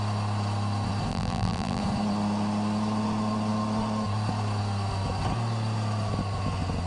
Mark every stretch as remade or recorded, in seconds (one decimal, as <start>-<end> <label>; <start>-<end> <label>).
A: 0.0-1.1 recorded; 1.1-1.8 remade; 1.8-6.9 recorded